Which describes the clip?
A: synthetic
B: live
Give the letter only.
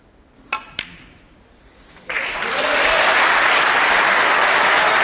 B